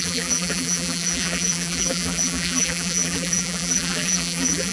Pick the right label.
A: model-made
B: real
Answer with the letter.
A